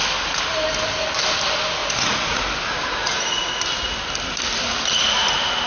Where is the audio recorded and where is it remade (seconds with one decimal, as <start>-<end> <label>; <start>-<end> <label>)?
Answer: 0.0-1.8 recorded; 1.8-2.4 remade; 2.4-3.0 recorded; 3.0-3.6 remade; 3.6-5.7 recorded